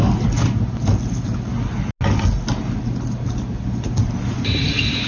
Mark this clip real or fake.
real